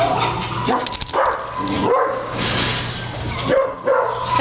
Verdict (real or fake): real